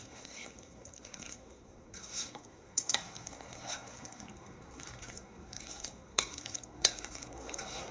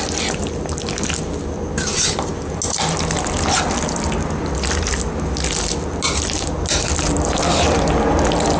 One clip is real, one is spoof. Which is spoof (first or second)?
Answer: first